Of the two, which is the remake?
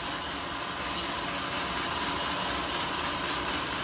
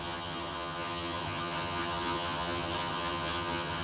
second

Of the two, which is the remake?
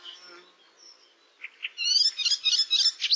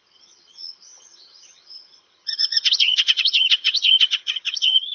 second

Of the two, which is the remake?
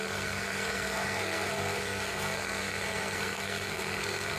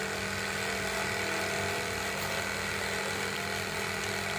first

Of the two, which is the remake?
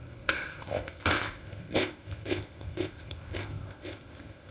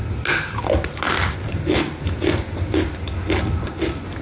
first